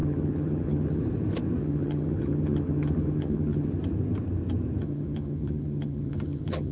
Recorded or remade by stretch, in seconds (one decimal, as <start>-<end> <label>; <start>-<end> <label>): 0.0-1.0 remade; 1.0-1.6 recorded; 1.6-3.7 remade; 3.7-4.8 recorded; 4.8-6.7 remade